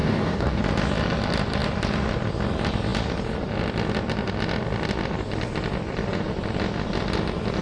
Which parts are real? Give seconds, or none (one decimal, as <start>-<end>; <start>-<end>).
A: 0.6-7.6

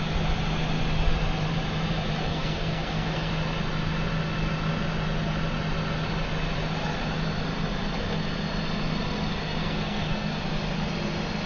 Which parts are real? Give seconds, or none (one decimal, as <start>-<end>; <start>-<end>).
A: 0.0-2.2; 3.3-9.6; 10.3-11.5

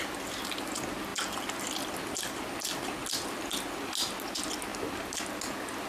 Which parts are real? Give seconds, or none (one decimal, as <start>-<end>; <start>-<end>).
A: 0.0-5.9

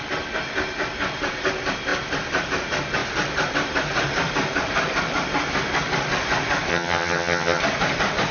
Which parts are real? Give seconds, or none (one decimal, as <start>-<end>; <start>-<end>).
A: 0.0-6.7; 7.6-8.3

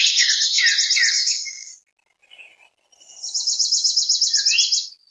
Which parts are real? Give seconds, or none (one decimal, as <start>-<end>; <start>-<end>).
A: 0.6-1.1; 1.7-5.1